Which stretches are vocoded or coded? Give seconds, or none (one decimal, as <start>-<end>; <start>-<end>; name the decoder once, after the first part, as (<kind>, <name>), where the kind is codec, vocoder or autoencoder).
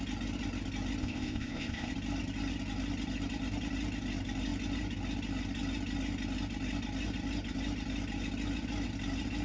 1.0-1.9 (codec, ZipCodec)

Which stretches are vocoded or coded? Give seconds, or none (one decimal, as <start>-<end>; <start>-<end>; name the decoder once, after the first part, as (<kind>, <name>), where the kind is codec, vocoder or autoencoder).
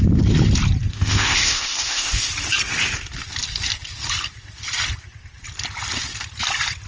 0.9-2.3 (codec, ZipCodec)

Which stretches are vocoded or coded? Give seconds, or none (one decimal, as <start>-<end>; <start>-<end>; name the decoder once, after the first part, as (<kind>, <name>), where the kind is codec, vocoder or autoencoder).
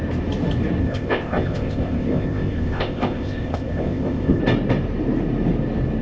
0.8-4.4 (codec, ZipCodec)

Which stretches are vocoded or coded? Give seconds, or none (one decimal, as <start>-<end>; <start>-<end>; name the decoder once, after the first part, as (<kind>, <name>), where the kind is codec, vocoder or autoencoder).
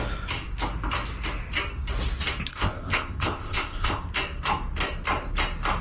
2.5-4.1 (codec, ZipCodec)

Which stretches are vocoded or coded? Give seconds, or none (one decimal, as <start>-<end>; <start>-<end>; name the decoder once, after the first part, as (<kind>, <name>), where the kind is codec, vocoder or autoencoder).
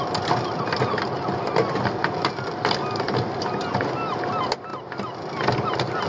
none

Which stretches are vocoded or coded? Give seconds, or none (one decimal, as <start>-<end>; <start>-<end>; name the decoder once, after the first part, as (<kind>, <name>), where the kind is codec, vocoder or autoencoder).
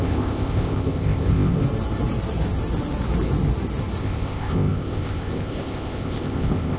0.0-1.6 (codec, ZipCodec); 4.0-6.8